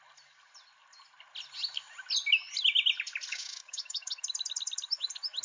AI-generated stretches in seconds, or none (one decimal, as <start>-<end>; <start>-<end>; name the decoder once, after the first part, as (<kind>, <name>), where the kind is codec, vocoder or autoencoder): 3.3-4.1 (codec, DAC)